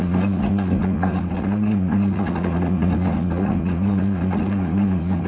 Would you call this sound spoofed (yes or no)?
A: yes